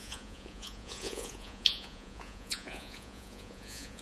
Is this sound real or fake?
fake